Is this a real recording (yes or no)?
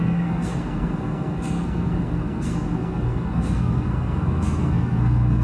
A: no